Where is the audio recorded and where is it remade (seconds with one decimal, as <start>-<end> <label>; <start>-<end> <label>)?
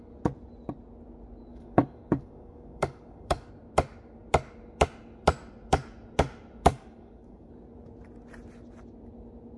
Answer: 0.0-1.5 recorded; 1.5-3.5 remade; 3.5-6.7 recorded; 6.7-7.5 remade; 7.5-9.6 recorded